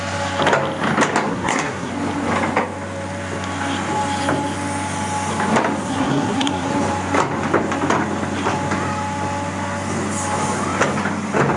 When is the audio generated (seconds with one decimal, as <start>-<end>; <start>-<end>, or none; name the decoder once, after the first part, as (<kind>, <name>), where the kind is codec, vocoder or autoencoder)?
1.3-1.9 (codec, SNAC); 5.8-6.7